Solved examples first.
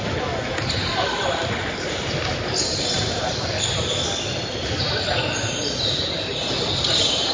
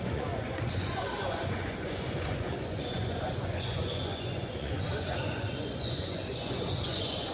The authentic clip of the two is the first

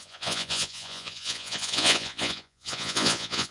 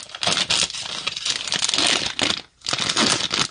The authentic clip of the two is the second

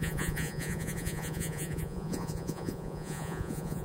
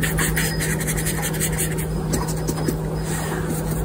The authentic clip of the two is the second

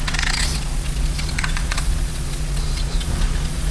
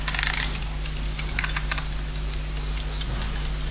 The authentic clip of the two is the second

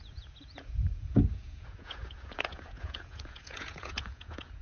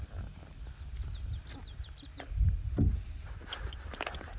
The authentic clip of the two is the second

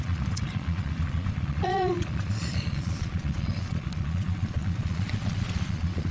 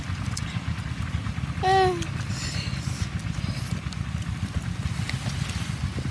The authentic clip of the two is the second